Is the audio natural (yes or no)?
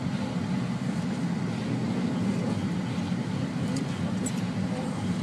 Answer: yes